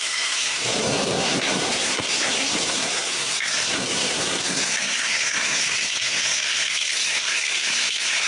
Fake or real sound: fake